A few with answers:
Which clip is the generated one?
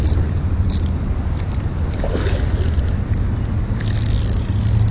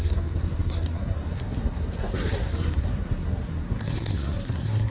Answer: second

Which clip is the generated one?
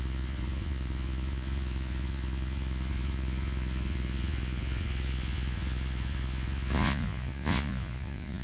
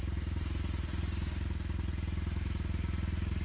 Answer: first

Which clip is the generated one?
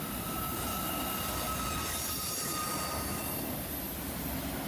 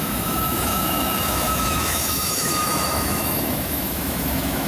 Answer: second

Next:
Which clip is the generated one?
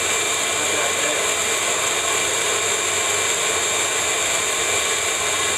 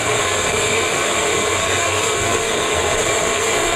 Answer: second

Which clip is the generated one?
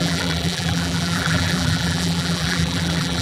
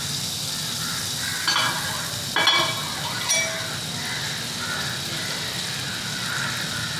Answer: first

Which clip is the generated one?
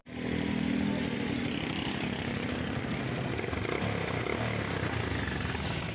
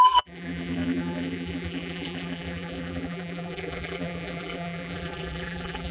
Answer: second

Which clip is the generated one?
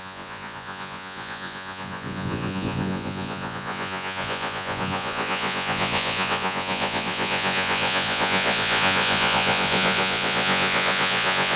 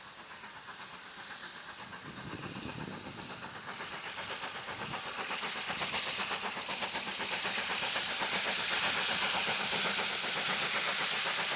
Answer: first